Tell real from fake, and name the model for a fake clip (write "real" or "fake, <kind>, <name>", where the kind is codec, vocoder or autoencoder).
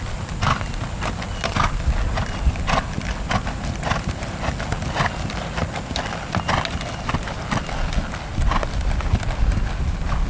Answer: real